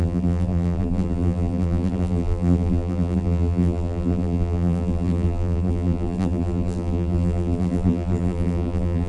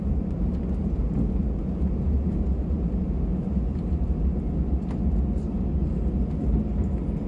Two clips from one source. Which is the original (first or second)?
second